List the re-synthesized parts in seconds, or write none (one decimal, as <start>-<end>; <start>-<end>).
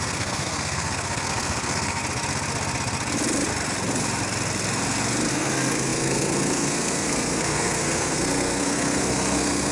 0.0-2.0; 5.3-9.7